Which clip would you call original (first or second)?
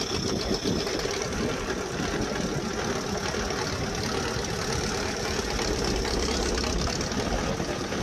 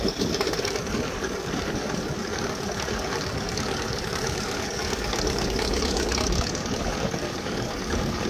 first